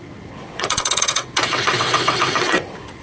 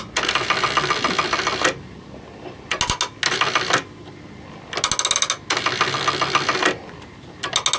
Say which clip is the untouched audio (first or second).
second